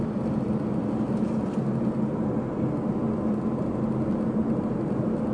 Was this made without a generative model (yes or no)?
yes